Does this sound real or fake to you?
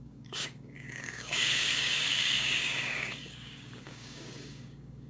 fake